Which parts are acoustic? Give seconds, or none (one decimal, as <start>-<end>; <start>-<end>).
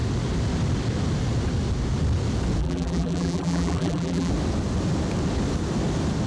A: 0.0-2.6; 4.3-6.3